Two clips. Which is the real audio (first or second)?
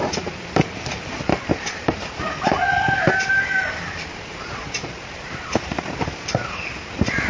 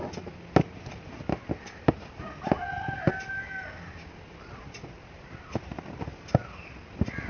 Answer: second